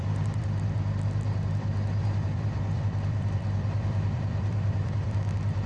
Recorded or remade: remade